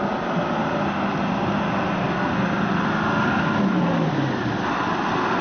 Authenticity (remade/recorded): recorded